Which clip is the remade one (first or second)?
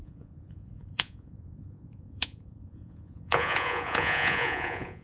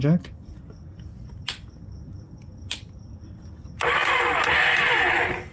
first